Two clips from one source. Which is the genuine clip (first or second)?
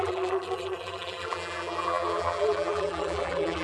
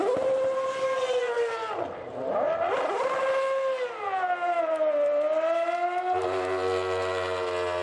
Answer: second